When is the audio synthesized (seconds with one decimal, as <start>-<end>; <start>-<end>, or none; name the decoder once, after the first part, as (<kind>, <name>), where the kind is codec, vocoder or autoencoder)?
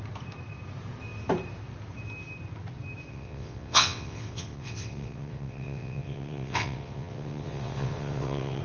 3.1-8.6 (vocoder, WaveNeXt)